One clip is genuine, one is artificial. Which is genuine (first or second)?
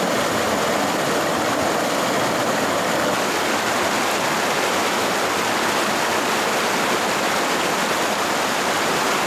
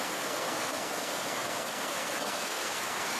first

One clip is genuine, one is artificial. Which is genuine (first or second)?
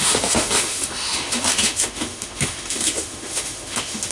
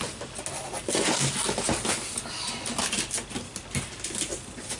second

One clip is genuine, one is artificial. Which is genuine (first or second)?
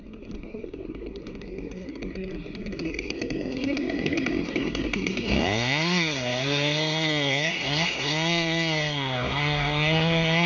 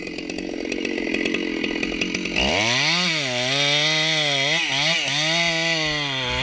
second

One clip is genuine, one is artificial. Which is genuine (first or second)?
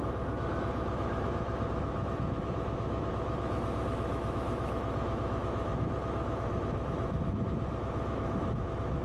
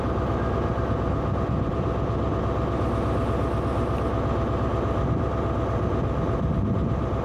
second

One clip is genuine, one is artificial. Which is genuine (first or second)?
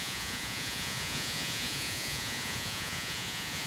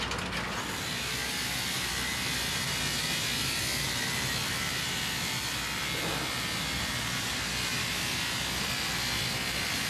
second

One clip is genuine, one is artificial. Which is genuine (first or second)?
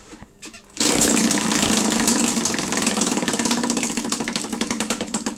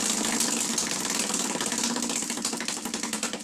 second